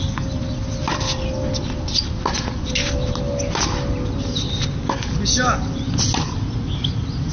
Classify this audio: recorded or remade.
recorded